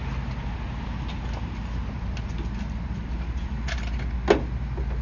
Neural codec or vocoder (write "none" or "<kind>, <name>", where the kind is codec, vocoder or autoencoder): none